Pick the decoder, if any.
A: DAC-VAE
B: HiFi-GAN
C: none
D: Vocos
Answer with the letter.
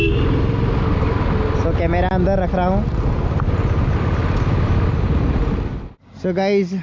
C